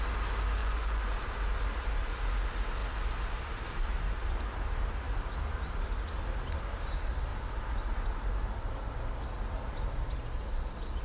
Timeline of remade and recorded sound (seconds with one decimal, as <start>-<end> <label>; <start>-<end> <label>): 0.0-0.6 recorded; 0.6-1.1 remade; 1.1-11.0 recorded